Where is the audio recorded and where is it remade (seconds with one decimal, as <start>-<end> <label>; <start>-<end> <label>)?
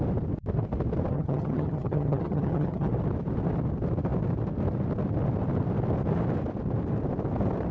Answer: 0.0-1.1 recorded; 1.1-2.9 remade; 2.9-7.7 recorded